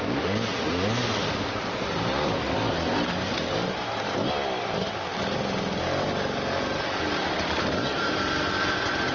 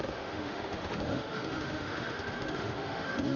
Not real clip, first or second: second